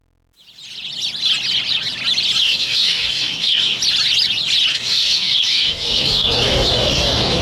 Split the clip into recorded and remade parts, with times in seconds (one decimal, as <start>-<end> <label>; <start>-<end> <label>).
0.0-2.4 recorded; 2.4-3.8 remade; 3.8-4.7 recorded; 4.7-7.4 remade